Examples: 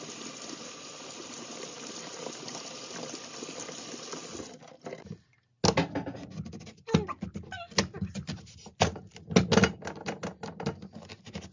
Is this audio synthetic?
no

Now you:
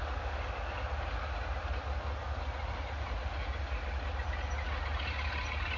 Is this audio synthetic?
no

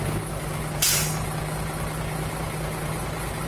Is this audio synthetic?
no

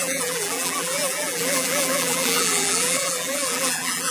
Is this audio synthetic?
yes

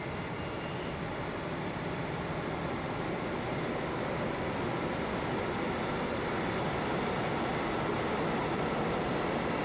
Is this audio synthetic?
no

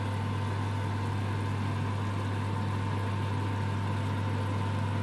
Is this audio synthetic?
no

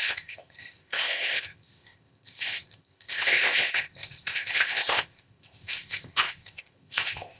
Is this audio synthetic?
yes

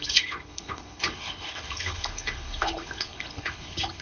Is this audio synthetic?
yes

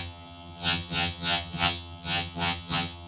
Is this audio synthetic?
yes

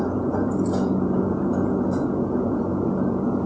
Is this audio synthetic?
yes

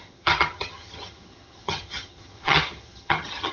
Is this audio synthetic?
yes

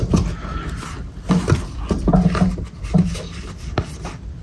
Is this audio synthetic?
no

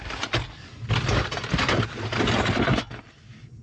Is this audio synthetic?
no